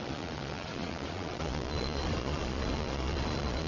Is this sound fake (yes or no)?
yes